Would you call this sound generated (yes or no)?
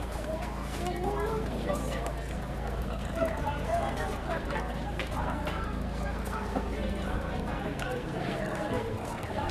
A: yes